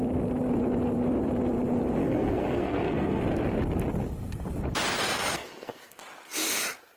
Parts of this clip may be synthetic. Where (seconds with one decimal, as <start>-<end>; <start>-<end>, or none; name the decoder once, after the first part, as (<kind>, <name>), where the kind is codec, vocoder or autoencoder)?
2.0-3.2 (codec, SNAC); 5.0-6.0